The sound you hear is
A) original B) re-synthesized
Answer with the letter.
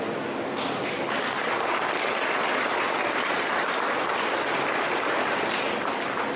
A